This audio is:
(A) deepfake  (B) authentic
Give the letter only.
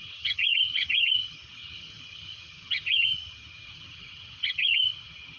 A